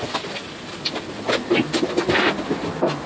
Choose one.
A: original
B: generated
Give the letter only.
A